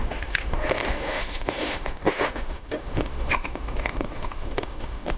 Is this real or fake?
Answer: fake